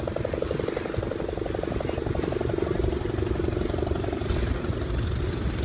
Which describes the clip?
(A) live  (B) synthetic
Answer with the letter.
A